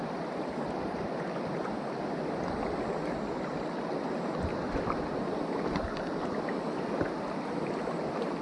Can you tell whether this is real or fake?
real